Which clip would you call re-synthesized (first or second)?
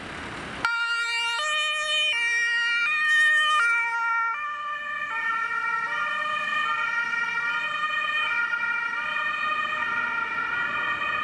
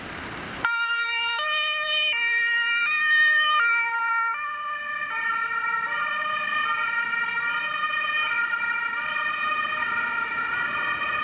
second